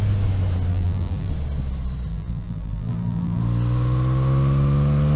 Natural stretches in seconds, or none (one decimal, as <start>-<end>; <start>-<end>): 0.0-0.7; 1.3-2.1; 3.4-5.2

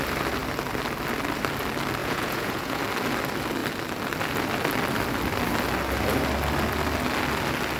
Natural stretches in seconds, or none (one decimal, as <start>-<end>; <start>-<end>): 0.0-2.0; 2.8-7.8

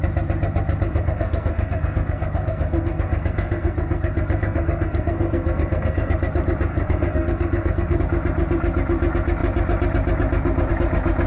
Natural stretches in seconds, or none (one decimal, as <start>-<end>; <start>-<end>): 0.0-0.9; 6.1-6.7; 8.0-11.3

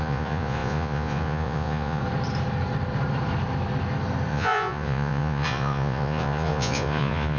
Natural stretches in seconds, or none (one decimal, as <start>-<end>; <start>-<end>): 2.0-4.3

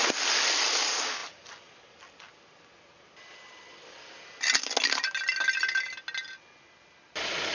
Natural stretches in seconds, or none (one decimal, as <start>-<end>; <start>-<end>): 0.0-7.5